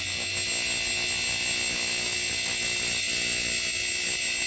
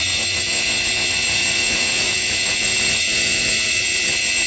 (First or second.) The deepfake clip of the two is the second